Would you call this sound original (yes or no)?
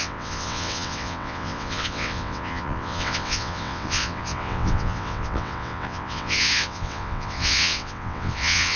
no